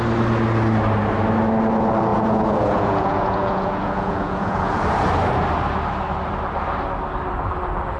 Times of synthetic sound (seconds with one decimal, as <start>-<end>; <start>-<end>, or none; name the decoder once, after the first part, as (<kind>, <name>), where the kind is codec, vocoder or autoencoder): 2.1-4.8 (vocoder, Vocos)